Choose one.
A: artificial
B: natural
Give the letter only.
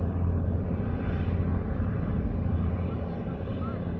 B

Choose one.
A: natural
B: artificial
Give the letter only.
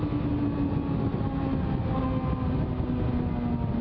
A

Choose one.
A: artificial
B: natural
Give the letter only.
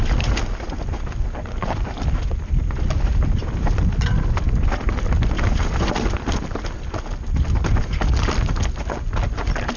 B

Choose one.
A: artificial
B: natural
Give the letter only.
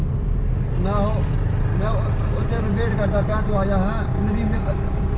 B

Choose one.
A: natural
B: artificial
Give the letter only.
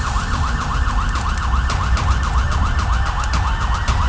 A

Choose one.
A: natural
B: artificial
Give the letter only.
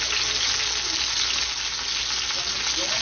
A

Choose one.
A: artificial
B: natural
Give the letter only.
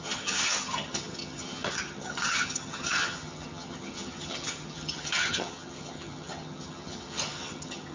A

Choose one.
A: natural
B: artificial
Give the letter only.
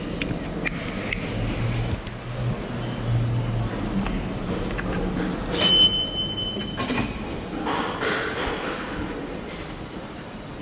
A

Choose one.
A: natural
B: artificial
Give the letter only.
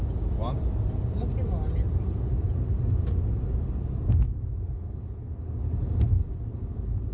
A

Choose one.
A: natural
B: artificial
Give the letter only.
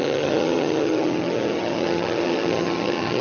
B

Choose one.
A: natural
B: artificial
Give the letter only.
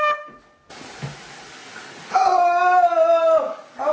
A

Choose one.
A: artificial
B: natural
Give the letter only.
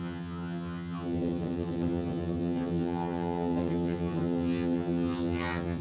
A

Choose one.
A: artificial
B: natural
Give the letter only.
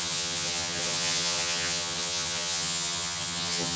A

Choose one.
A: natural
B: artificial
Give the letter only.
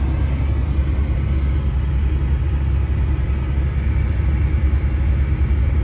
A